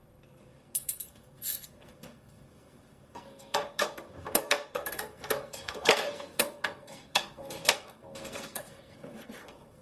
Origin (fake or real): fake